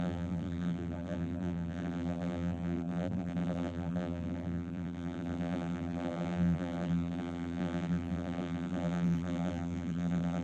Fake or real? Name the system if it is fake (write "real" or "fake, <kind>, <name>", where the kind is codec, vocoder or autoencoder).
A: fake, vocoder, BigVGAN v2